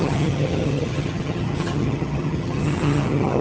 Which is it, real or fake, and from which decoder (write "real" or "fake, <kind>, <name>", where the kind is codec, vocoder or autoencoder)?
fake, vocoder, HiFi-GAN